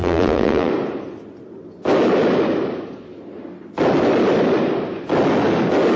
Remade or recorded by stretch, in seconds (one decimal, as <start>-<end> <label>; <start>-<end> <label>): 0.0-0.7 remade; 0.7-6.0 recorded